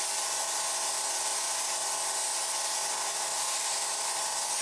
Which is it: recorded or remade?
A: recorded